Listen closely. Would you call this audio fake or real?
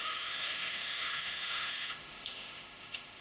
fake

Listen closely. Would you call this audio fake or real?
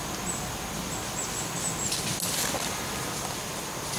real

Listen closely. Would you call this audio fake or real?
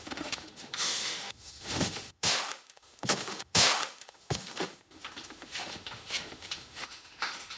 fake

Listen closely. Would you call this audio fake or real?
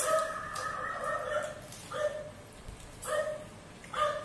real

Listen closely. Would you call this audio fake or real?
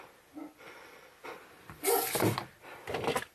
real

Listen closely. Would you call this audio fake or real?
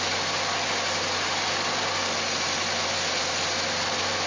real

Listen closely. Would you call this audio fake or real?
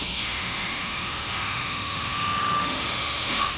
fake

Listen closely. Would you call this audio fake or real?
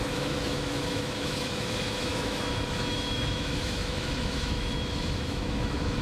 fake